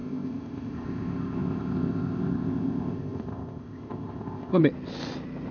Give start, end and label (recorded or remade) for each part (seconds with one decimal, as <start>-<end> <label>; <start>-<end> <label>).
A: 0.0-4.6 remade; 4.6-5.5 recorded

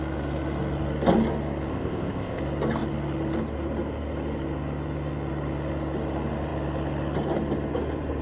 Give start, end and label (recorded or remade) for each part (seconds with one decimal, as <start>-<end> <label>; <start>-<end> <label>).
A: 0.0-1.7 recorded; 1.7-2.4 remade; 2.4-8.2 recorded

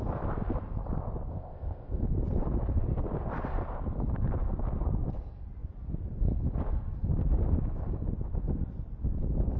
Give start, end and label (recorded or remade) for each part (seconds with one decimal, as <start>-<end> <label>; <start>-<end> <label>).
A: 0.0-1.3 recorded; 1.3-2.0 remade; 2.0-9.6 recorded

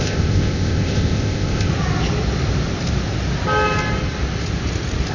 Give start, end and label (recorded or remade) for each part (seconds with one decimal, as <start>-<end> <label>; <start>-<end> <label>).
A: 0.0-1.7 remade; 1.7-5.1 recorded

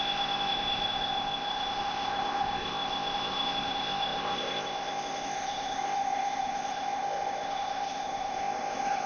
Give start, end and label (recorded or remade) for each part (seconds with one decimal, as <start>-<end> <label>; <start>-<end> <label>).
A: 0.0-9.1 remade

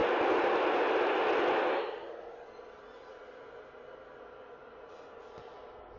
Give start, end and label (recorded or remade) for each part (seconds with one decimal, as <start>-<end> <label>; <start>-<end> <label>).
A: 0.0-6.0 recorded

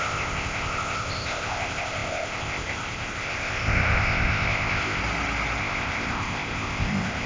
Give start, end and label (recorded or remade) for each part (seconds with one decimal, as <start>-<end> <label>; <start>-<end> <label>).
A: 0.0-5.0 remade; 5.0-5.6 recorded; 5.6-7.3 remade

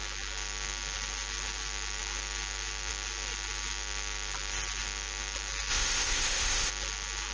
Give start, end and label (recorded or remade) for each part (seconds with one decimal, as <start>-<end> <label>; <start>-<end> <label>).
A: 0.0-5.7 recorded; 5.7-6.7 remade; 6.7-7.3 recorded